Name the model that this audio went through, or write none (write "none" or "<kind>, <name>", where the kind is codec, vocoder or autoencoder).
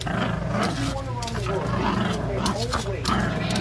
none